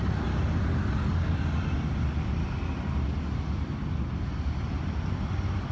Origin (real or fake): real